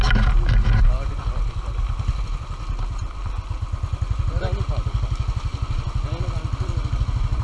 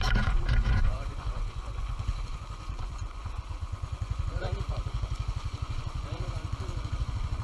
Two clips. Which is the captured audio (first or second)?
first